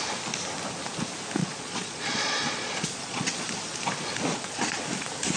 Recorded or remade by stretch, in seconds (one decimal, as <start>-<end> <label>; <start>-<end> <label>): 0.0-1.4 recorded; 1.4-3.5 remade; 3.5-4.3 recorded; 4.3-4.8 remade; 4.8-5.4 recorded